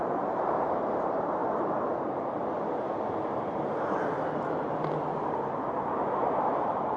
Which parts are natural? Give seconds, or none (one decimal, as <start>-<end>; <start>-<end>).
1.4-5.6